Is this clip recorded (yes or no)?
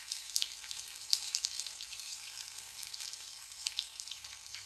no